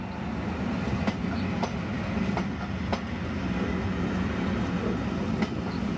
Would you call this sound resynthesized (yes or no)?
no